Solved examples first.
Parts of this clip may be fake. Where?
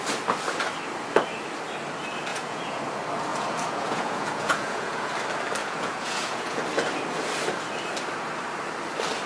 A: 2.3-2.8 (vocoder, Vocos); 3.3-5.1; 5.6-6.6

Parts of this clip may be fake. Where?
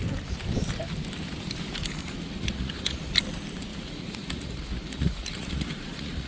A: 2.0-3.1 (vocoder, Vocos); 3.7-6.3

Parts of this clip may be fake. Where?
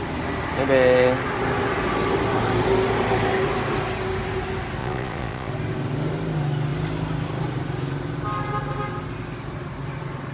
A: 4.8-5.5 (vocoder, Vocos)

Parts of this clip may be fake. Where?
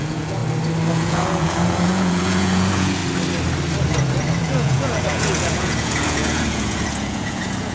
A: 0.0-0.4 (vocoder, Vocos); 0.9-3.0; 4.4-7.7